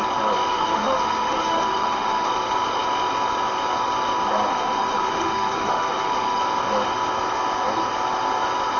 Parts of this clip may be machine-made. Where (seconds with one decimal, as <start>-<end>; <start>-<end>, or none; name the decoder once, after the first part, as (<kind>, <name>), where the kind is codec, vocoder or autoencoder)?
0.5-2.3 (autoencoder, DAC-VAE); 4.5-6.4